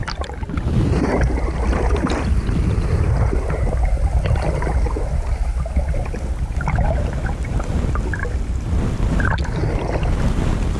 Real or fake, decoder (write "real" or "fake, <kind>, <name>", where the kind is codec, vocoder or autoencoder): real